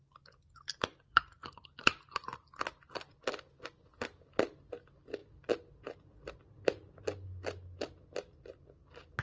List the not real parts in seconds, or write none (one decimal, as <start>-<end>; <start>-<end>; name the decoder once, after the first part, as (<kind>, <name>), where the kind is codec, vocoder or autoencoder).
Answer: none